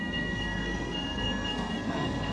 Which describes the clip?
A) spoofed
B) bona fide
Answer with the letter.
A